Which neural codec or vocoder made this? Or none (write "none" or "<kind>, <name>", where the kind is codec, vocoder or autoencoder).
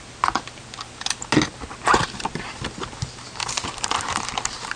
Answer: none